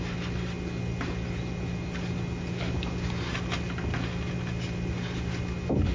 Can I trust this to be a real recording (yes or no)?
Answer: yes